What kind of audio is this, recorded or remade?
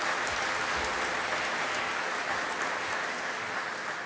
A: recorded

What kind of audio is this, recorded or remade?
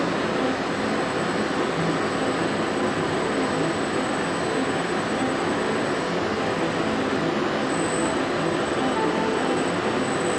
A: recorded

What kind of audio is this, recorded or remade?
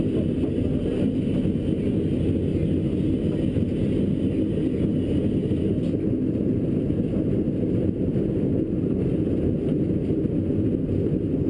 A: recorded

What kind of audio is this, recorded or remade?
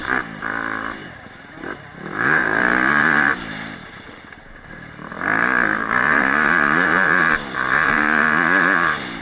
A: remade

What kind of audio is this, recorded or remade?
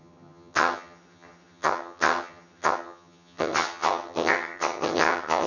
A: remade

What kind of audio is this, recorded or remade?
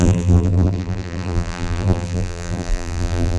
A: remade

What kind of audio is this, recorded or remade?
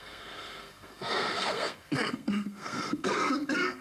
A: remade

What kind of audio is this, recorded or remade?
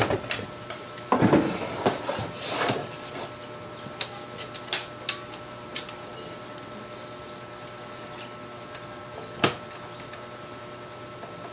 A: recorded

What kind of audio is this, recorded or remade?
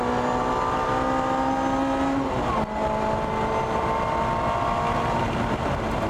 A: recorded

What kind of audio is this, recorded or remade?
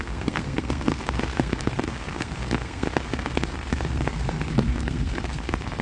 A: remade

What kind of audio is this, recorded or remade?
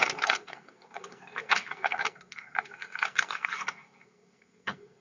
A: remade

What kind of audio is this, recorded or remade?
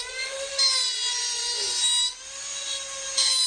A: recorded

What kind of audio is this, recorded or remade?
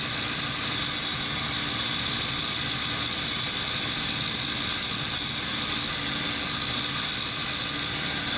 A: recorded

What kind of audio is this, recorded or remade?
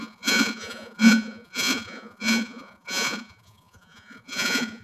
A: remade